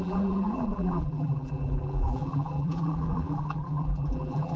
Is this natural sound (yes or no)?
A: no